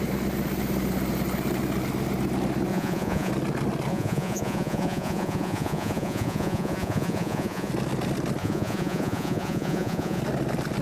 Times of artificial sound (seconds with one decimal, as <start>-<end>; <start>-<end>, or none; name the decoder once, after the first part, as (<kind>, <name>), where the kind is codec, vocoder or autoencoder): 2.7-3.3 (vocoder, Vocos); 3.9-7.7; 8.4-10.2